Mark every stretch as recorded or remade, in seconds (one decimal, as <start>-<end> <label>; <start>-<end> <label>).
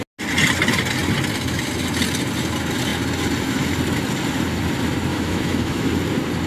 0.0-5.1 recorded; 5.1-5.9 remade; 5.9-6.5 recorded